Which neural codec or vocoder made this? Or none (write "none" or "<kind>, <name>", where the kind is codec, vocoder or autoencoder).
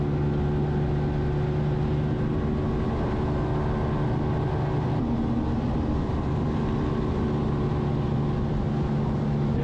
none